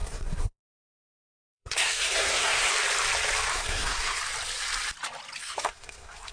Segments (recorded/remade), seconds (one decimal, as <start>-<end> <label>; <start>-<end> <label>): 0.0-2.7 remade; 2.7-3.5 recorded; 3.5-4.2 remade; 4.2-5.4 recorded; 5.4-6.3 remade